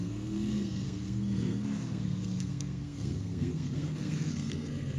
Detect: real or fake fake